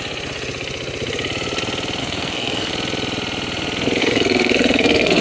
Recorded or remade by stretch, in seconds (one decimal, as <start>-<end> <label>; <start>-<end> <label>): 0.0-2.0 recorded; 2.0-2.7 remade; 2.7-4.0 recorded; 4.0-5.2 remade